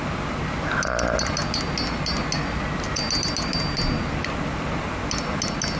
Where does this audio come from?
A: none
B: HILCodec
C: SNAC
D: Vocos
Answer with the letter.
A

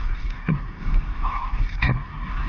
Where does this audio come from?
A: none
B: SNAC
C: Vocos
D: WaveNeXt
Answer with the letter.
B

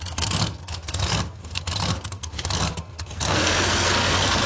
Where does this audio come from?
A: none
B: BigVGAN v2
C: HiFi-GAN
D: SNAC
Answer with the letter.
D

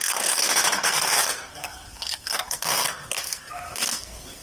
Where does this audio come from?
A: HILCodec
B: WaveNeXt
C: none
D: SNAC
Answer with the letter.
D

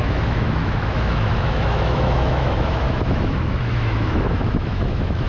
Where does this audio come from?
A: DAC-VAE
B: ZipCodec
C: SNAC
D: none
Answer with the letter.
A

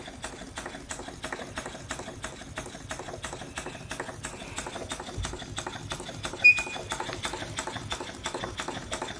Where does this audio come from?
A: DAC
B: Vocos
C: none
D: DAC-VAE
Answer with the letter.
C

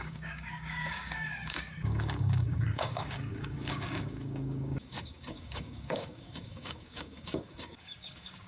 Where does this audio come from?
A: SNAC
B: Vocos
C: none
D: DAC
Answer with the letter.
D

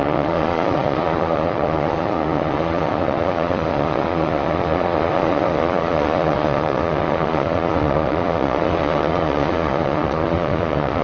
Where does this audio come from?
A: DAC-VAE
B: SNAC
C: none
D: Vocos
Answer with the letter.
D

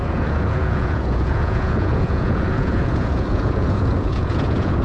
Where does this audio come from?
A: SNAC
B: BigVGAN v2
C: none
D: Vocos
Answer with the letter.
D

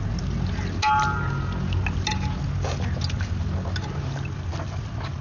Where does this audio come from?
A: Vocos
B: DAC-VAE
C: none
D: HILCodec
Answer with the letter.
C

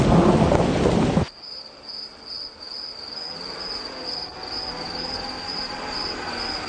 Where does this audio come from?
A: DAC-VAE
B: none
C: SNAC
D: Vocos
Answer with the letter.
B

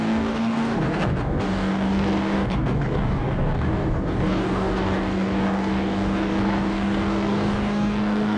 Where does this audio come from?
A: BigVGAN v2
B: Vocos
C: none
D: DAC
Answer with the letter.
D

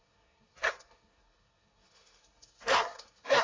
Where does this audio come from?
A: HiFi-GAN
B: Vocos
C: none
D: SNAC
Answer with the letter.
D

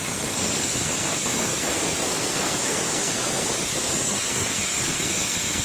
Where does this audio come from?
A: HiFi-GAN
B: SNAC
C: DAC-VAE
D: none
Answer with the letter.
B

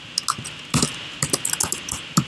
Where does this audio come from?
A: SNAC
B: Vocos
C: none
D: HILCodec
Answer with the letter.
C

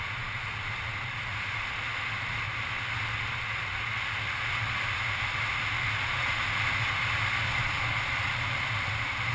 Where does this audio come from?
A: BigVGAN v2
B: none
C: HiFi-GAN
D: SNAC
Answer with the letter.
B